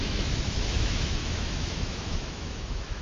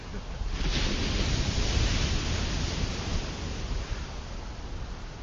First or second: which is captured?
second